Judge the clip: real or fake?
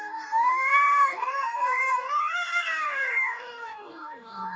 fake